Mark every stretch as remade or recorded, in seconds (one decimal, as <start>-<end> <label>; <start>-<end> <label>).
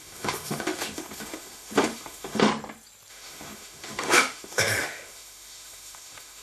0.0-2.5 remade; 2.5-3.1 recorded; 3.1-6.4 remade